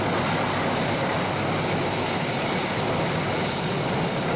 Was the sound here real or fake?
real